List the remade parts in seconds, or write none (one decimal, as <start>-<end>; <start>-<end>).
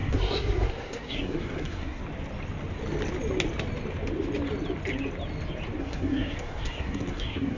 0.0-2.0; 5.8-7.6